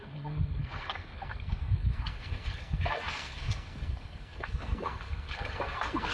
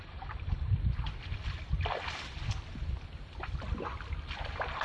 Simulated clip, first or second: first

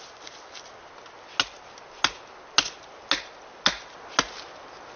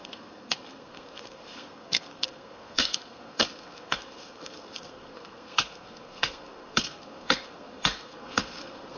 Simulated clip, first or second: second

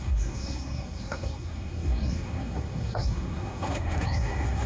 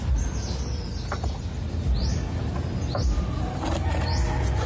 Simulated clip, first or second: first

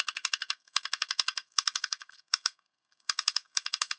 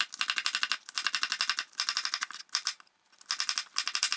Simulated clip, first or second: first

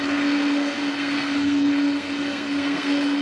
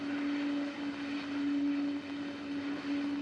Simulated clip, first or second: first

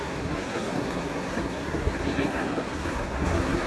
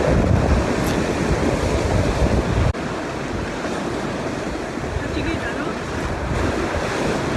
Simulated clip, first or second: first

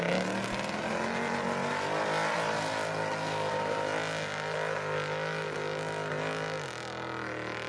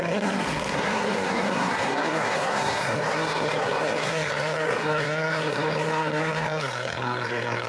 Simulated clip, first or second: second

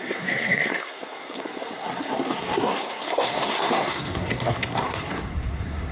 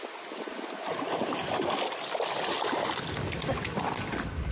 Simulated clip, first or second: first